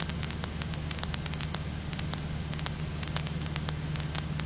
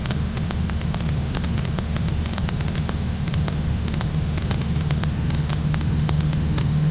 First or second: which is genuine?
first